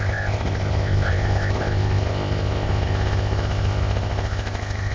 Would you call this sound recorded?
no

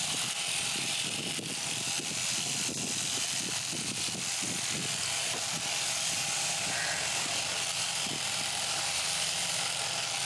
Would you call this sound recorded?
yes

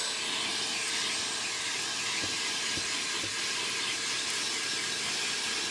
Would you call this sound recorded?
yes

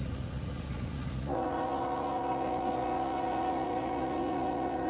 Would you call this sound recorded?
no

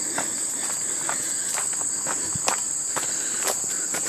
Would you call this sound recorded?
yes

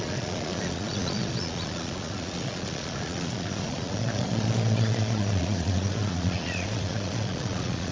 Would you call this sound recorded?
no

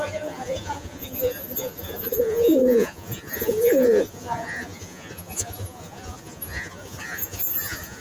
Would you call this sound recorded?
no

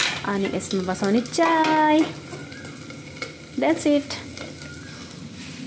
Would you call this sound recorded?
yes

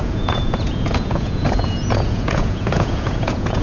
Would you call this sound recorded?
no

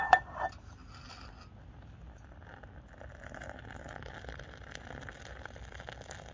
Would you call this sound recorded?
yes